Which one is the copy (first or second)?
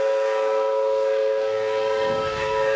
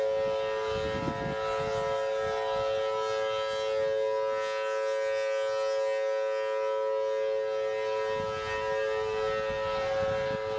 first